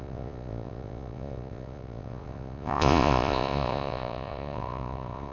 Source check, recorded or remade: remade